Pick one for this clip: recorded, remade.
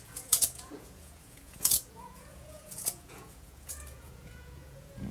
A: remade